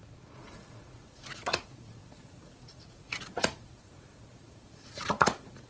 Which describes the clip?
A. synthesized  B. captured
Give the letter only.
A